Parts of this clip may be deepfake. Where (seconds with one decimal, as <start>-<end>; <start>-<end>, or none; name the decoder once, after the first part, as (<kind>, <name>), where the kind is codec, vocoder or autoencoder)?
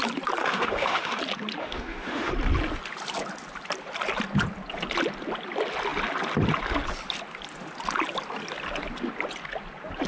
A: 0.4-1.2 (autoencoder, DAC-VAE); 1.6-2.3